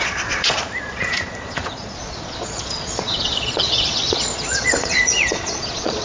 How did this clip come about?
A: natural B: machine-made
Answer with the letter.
B